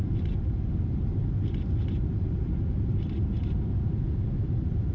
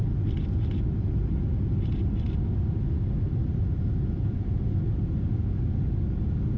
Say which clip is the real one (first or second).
second